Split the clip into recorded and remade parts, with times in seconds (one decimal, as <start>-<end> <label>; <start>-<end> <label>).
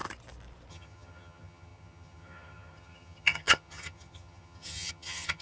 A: 0.0-0.7 recorded; 0.7-5.4 remade